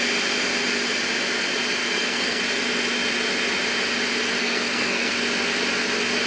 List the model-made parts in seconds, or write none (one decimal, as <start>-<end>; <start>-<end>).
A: 1.8-2.4; 4.4-5.1